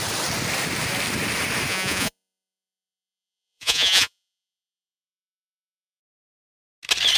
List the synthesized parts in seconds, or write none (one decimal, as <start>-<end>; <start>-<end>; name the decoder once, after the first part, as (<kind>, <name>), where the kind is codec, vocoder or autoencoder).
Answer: 1.7-6.0 (vocoder, Vocos)